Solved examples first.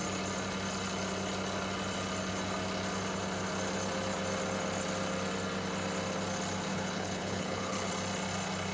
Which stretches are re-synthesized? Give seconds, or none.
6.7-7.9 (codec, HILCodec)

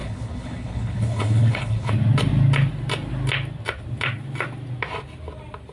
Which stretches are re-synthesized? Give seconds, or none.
0.0-1.9 (codec, HILCodec)

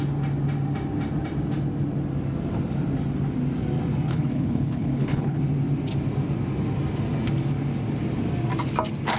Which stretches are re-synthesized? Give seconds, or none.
4.1-5.4 (codec, HILCodec)

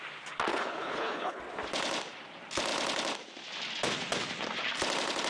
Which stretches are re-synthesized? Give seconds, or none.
0.5-1.4 (codec, HILCodec)

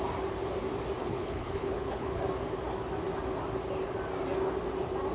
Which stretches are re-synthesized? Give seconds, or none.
1.0-2.2 (codec, HILCodec)